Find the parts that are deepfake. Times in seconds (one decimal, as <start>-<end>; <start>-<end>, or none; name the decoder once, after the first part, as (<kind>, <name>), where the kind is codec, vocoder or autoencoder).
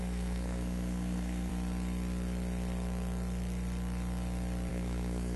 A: 0.0-1.5 (codec, SNAC); 4.7-5.4